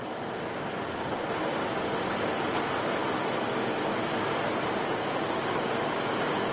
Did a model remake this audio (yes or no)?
no